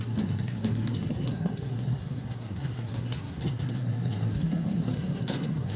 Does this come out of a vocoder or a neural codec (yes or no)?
yes